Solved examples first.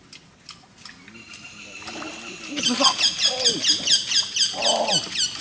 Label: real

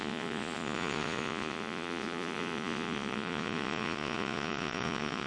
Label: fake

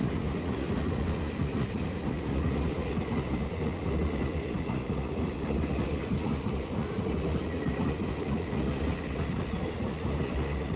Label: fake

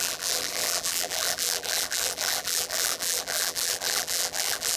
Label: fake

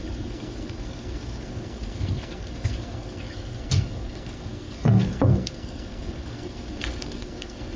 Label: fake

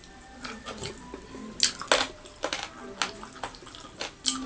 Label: real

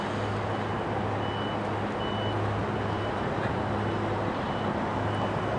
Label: real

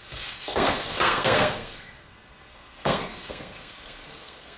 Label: fake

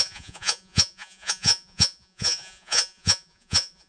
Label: fake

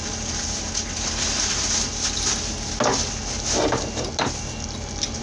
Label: real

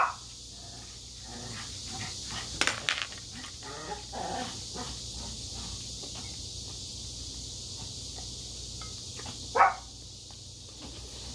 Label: real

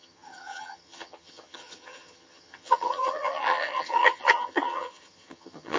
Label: fake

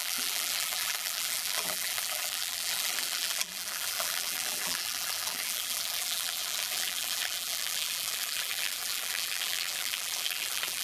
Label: fake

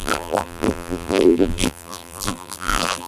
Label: fake